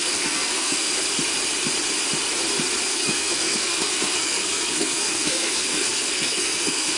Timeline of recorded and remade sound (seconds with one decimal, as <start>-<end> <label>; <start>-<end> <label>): 0.0-0.9 remade; 0.9-2.9 recorded; 2.9-7.0 remade